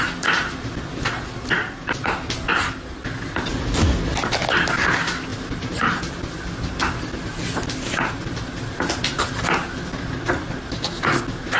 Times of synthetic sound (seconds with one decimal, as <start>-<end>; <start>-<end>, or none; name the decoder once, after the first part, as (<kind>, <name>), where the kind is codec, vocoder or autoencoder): 5.3-6.1 (vocoder, BigVGAN v2)